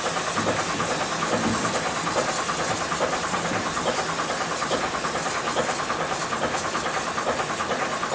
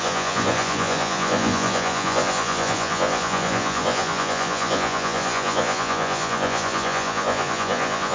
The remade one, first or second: second